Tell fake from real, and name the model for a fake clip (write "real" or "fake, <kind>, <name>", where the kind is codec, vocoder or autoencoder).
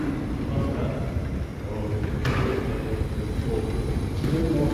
real